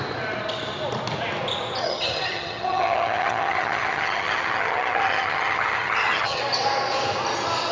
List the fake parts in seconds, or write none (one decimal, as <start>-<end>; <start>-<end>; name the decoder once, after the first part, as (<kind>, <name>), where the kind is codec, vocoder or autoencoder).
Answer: 1.8-6.4 (vocoder, HiFi-GAN)